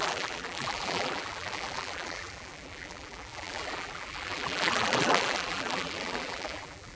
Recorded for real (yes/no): no